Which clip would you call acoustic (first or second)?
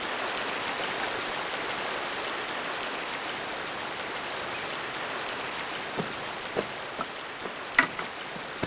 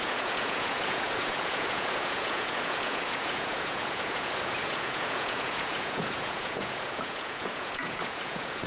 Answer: first